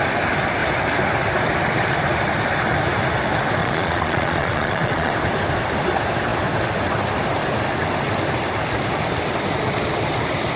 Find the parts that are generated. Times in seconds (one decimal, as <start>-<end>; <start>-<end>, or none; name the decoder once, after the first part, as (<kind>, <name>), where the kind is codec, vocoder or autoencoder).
3.6-5.1 (vocoder, Vocos)